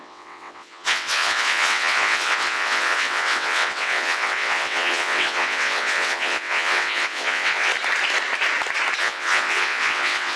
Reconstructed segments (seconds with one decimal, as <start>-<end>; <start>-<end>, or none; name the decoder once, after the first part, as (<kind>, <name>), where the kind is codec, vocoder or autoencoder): 0.0-7.7 (vocoder, WaveNeXt); 9.0-10.4

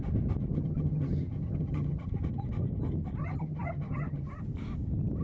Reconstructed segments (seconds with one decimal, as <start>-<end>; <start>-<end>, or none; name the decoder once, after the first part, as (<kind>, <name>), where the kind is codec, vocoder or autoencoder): 0.5-2.1 (vocoder, HiFi-GAN); 3.2-4.3

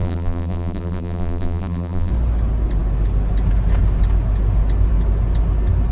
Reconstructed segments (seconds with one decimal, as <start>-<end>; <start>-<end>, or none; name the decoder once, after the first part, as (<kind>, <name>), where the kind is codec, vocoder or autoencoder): 0.0-2.1 (vocoder, BigVGAN v2)

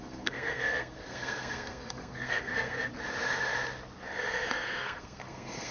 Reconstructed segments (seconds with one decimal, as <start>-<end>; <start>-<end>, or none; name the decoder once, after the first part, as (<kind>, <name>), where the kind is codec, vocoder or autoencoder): 0.0-2.9 (codec, SNAC); 4.2-5.7